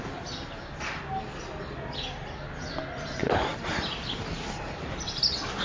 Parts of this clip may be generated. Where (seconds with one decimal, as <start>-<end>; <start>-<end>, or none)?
none